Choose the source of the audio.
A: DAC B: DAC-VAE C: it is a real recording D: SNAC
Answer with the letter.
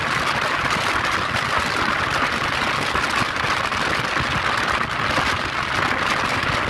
C